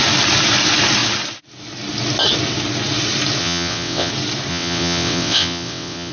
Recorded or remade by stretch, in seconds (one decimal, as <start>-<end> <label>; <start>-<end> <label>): 0.0-3.4 recorded; 3.4-4.1 remade; 4.1-4.5 recorded; 4.5-6.1 remade